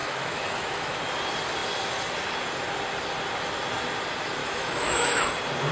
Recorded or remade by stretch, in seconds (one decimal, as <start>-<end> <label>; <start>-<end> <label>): 0.0-1.0 remade; 1.0-4.4 recorded; 4.4-5.3 remade; 5.3-5.7 recorded